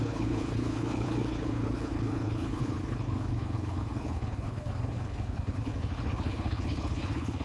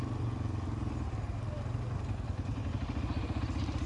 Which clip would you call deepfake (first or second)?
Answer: first